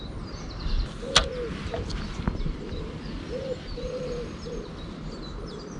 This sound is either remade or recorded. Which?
recorded